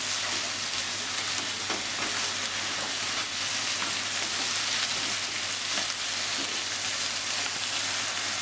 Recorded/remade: recorded